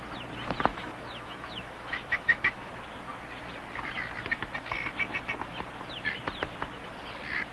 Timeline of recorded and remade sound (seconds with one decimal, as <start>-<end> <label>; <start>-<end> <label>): 0.0-0.7 recorded; 0.7-2.7 remade; 2.7-7.5 recorded